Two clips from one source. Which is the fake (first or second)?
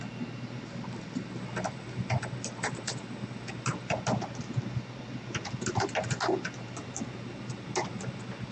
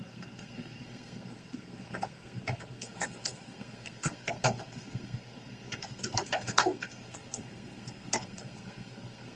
second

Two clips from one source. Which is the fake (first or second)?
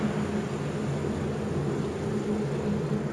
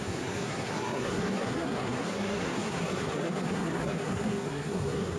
second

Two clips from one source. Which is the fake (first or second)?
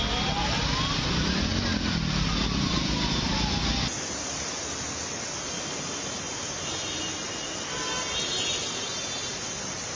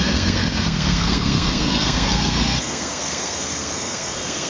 second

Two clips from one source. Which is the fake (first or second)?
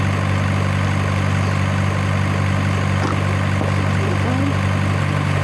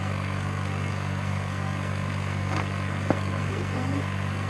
second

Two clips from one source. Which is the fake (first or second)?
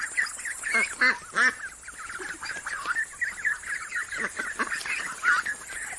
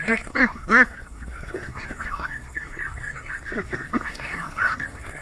second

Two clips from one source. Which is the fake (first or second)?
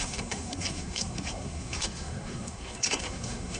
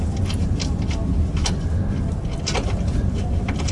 first